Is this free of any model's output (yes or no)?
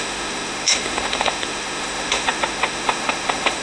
no